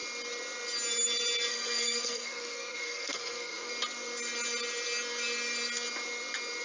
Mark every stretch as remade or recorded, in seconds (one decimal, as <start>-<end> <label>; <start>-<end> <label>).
0.0-1.5 recorded; 1.5-3.7 remade; 3.7-6.6 recorded